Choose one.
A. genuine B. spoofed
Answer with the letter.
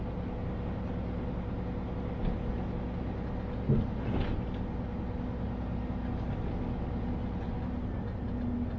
A